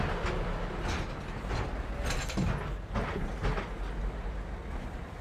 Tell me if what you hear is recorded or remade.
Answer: recorded